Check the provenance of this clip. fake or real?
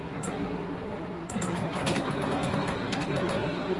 fake